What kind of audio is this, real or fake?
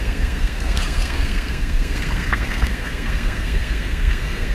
fake